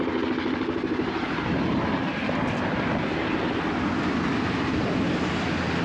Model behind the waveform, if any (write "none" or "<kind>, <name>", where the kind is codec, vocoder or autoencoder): none